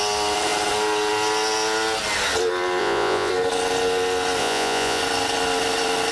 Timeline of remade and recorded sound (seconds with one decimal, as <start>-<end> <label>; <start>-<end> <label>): 0.0-2.8 recorded; 2.8-3.3 remade; 3.3-4.4 recorded; 4.4-5.0 remade; 5.0-6.1 recorded